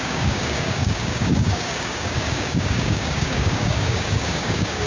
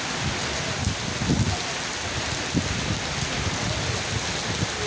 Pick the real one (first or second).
second